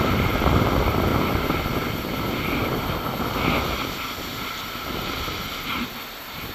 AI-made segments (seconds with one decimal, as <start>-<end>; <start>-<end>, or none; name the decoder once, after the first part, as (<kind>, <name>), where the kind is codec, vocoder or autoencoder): 0.0-1.1 (vocoder, BigVGAN v2); 5.0-6.5

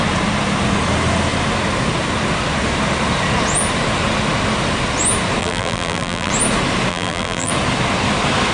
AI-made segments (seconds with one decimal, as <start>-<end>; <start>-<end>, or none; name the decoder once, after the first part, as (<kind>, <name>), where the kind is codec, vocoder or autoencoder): 5.4-6.3 (vocoder, BigVGAN v2); 6.9-7.5